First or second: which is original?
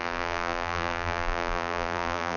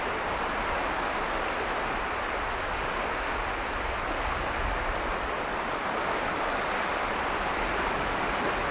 second